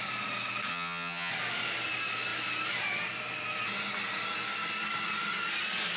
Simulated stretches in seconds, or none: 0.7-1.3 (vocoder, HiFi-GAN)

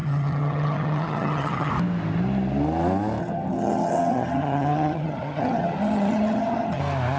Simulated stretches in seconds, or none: 0.0-1.7 (vocoder, HiFi-GAN); 3.2-6.8

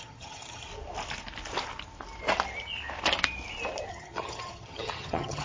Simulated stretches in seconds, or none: 0.0-0.7 (vocoder, HiFi-GAN); 3.9-5.4

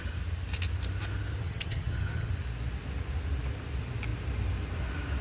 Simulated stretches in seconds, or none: 1.4-2.3 (vocoder, HiFi-GAN)

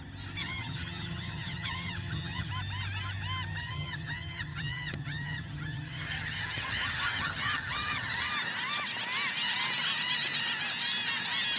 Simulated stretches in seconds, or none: 0.4-2.5 (vocoder, HiFi-GAN); 3.6-8.3

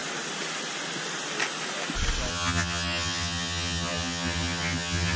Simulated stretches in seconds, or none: 2.3-5.2 (vocoder, HiFi-GAN)

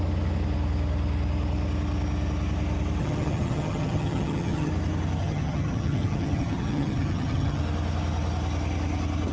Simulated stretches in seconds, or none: 3.0-4.7 (vocoder, HiFi-GAN); 5.2-7.6

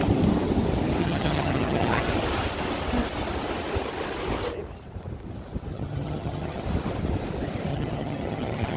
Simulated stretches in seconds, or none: 1.0-2.0 (vocoder, HiFi-GAN); 5.7-6.6; 7.7-8.8